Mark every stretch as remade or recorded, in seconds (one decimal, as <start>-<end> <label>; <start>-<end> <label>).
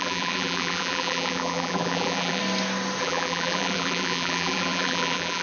0.0-2.4 remade; 2.4-3.0 recorded; 3.0-5.4 remade